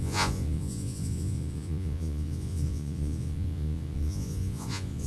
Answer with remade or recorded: remade